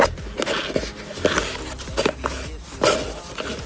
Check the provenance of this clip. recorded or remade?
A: recorded